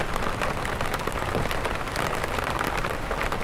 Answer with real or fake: real